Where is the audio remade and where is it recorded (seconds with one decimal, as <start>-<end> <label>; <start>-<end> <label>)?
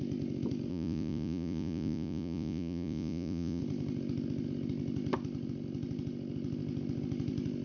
0.0-0.7 recorded; 0.7-3.6 remade; 3.6-7.6 recorded